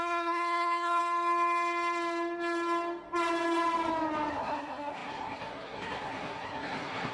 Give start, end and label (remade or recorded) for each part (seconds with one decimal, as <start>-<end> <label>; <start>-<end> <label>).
0.0-1.0 remade; 1.0-4.3 recorded; 4.3-7.1 remade